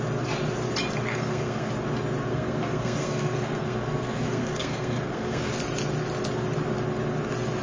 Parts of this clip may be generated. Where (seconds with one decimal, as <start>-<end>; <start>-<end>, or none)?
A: 1.1-1.7; 2.3-5.5